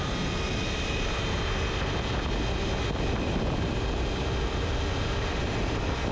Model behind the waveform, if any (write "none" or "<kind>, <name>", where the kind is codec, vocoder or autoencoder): none